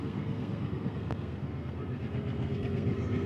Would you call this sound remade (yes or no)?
yes